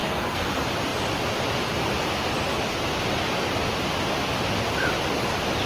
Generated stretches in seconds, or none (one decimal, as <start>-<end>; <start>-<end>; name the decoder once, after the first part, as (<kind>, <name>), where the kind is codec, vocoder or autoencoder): 0.0-0.5 (codec, SNAC)